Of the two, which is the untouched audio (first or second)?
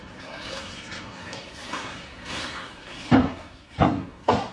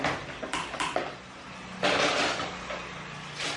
second